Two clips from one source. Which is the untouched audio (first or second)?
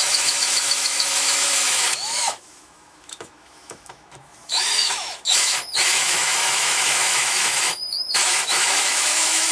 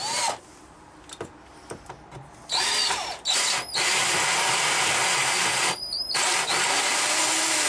second